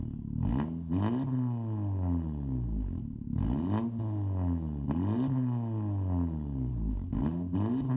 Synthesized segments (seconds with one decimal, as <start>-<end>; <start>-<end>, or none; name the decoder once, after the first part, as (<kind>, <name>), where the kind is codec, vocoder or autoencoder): 6.7-7.2 (codec, DAC)